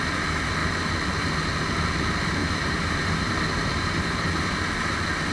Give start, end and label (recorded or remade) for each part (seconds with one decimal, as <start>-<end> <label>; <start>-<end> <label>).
0.0-2.4 recorded; 2.4-3.3 remade; 3.3-3.7 recorded; 3.7-4.4 remade; 4.4-5.3 recorded